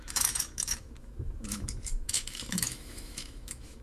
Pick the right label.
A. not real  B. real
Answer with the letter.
A